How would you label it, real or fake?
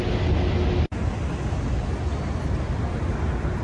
real